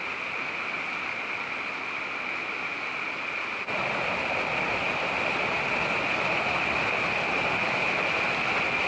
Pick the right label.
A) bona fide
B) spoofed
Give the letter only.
A